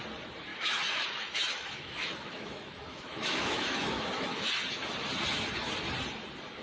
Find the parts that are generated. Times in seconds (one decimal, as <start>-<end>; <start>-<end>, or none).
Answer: 0.5-4.5